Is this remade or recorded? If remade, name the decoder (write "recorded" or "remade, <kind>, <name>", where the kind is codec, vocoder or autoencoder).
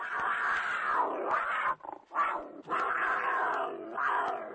remade, vocoder, BigVGAN v2